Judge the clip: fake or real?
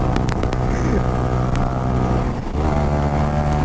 real